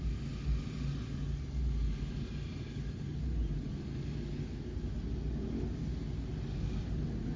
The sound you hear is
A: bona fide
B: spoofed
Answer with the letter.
A